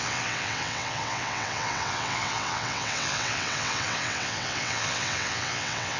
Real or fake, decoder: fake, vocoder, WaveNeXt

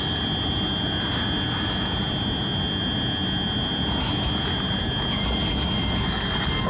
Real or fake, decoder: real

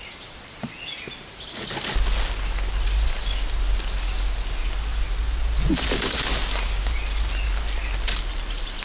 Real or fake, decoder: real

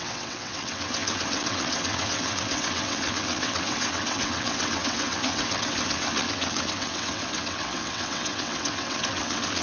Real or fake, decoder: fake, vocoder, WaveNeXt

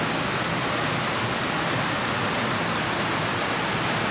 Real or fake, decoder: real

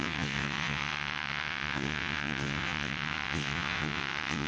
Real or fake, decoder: fake, vocoder, WaveNeXt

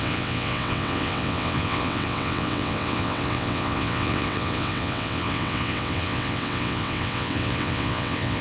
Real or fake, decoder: fake, vocoder, WaveNeXt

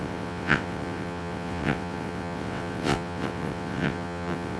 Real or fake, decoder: fake, vocoder, WaveNeXt